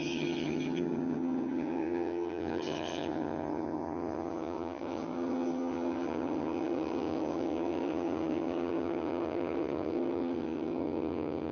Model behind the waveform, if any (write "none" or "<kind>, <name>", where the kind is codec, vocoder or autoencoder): vocoder, HiFi-GAN